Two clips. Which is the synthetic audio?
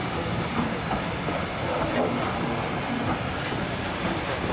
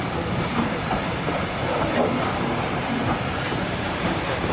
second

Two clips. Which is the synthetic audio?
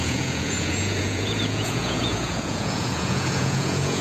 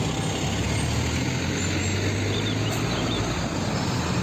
first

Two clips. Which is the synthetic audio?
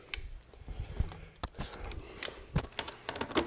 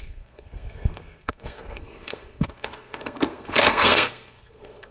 second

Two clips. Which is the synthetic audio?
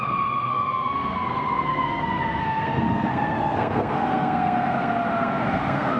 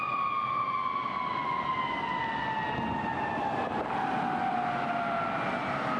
first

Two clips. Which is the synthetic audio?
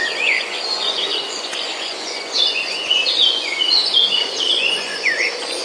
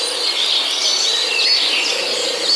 first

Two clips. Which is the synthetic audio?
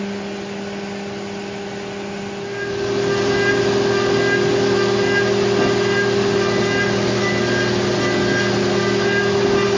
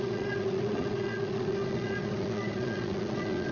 second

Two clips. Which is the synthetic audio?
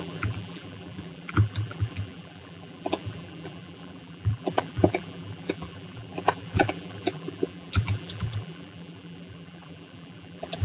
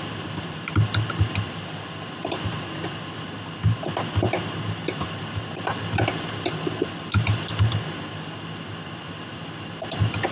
first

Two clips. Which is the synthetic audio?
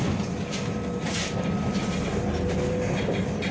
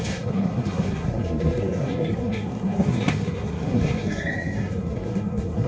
second